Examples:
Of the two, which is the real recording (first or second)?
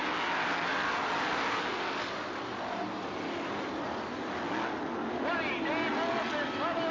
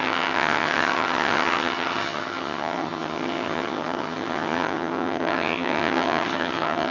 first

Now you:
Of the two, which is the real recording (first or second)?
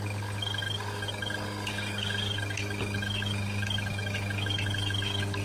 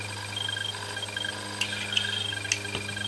second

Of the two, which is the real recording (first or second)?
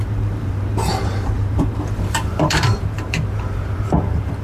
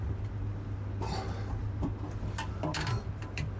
second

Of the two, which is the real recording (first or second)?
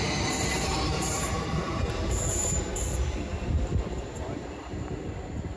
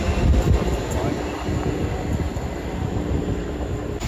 second